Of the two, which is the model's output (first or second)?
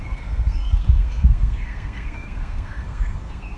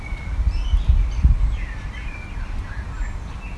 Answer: first